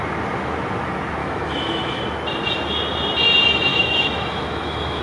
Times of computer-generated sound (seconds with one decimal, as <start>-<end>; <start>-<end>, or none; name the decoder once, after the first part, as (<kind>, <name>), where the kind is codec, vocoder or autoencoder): 1.2-2.0 (autoencoder, DAC-VAE); 3.7-5.0